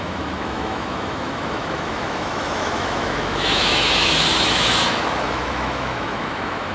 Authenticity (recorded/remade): remade